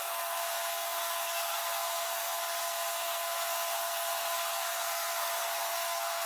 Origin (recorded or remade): remade